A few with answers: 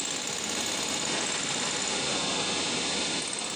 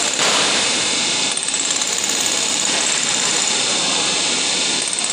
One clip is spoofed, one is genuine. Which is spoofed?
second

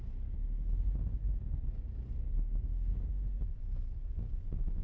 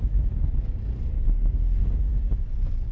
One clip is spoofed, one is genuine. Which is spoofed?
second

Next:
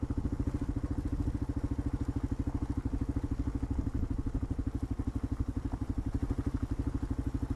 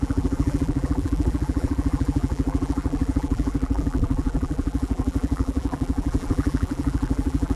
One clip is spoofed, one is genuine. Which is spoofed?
second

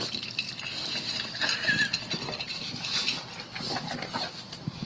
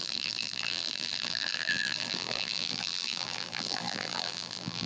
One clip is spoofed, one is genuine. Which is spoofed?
second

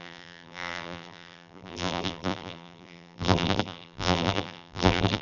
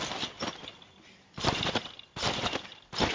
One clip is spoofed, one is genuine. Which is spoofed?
first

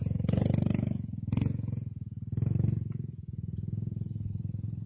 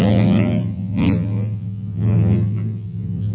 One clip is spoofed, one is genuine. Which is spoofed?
second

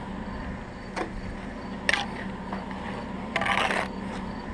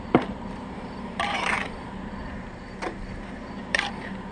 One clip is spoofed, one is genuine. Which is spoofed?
second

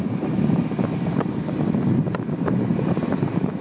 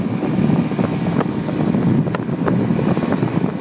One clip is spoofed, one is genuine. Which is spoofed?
first